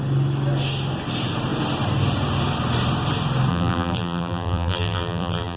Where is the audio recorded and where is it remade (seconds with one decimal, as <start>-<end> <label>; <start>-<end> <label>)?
0.0-3.5 recorded; 3.5-5.6 remade